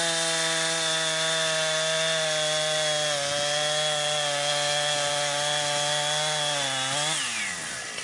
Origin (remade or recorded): recorded